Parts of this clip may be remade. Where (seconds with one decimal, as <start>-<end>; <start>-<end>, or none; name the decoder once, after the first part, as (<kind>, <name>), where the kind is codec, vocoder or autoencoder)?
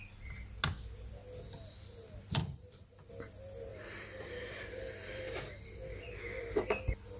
2.4-3.1 (vocoder, BigVGAN v2); 3.7-6.1